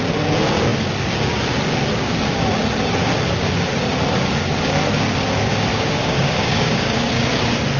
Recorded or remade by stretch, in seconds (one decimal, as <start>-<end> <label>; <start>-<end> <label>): 0.0-5.7 recorded; 5.7-7.1 remade; 7.1-7.8 recorded